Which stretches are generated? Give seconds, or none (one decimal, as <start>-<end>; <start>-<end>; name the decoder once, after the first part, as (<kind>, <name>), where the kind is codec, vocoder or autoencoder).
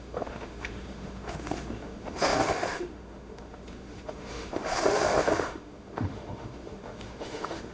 0.0-7.7 (autoencoder, DAC-VAE)